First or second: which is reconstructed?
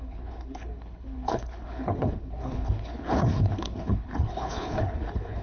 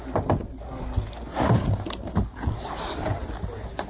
first